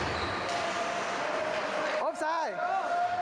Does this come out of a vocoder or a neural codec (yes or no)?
no